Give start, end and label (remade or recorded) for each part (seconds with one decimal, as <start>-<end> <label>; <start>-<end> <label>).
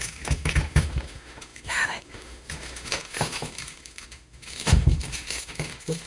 0.0-6.1 remade